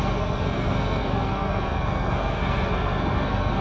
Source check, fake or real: fake